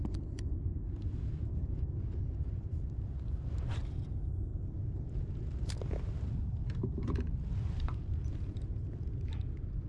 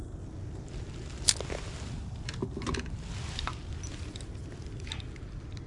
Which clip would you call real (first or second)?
second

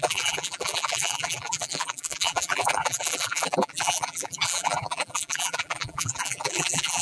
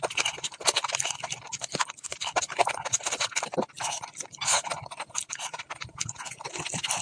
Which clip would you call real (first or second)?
second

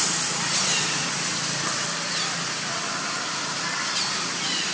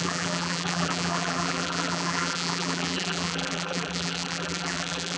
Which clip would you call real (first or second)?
first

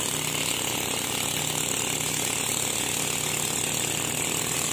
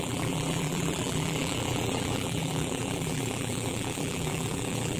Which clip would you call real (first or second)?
first